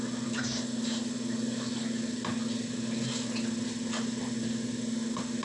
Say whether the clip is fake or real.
real